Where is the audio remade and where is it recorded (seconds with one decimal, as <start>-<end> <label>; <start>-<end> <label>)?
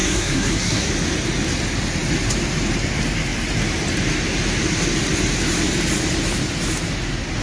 0.0-0.9 remade; 0.9-7.4 recorded